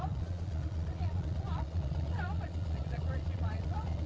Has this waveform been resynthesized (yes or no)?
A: yes